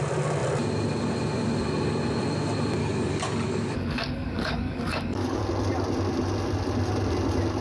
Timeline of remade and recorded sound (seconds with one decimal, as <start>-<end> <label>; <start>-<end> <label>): 0.0-2.8 recorded; 2.8-5.4 remade; 5.4-7.6 recorded